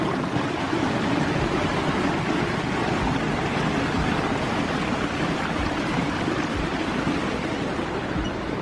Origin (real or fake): real